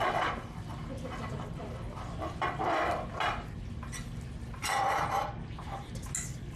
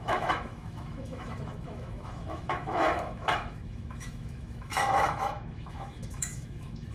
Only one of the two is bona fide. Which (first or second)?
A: first